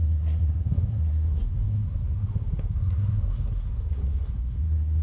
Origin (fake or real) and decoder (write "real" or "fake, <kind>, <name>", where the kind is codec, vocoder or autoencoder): fake, codec, SNAC